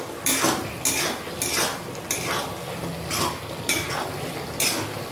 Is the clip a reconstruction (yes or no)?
no